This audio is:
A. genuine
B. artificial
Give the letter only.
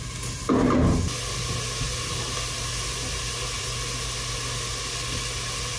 A